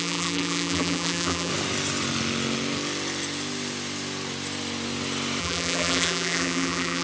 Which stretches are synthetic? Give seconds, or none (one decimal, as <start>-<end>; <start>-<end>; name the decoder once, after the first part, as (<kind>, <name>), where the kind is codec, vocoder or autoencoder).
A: 0.0-1.5 (vocoder, BigVGAN v2); 5.4-7.0